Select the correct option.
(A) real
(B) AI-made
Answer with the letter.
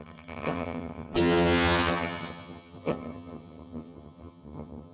B